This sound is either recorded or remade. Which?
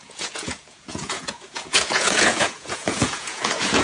remade